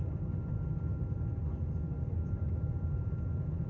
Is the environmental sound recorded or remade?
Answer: recorded